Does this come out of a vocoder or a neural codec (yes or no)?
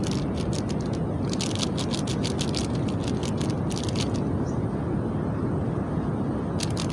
no